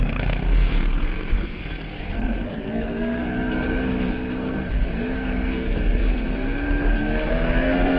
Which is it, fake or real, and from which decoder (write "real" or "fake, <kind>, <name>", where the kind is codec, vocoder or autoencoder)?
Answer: fake, codec, SNAC